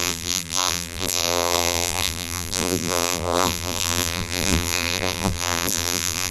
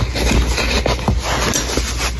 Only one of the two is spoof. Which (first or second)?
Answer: first